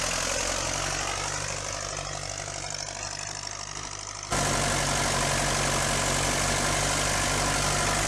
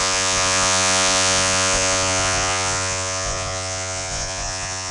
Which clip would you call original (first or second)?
first